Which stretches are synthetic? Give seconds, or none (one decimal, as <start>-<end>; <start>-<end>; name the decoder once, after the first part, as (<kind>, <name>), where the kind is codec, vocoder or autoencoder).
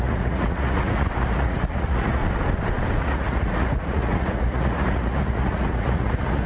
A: 0.0-2.2 (vocoder, Vocos); 3.0-6.5